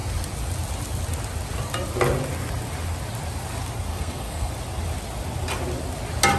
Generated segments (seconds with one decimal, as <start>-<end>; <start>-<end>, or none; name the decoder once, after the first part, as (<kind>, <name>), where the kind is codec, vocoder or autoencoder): 3.9-4.5 (codec, SNAC)